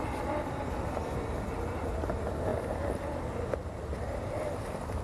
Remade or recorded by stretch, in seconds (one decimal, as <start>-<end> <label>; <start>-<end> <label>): 0.0-5.0 recorded